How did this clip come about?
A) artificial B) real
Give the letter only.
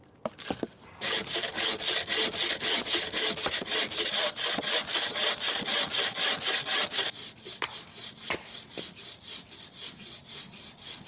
B